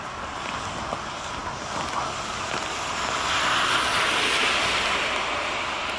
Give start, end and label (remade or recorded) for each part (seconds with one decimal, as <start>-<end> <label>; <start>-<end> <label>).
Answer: 0.0-6.0 recorded